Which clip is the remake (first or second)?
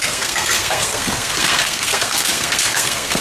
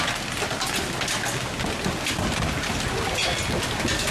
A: first